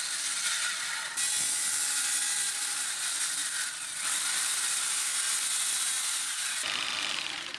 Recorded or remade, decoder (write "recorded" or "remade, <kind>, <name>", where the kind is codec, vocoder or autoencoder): recorded